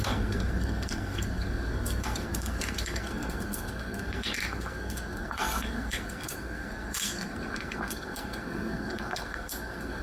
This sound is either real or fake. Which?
fake